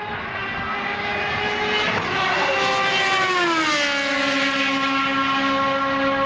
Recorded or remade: recorded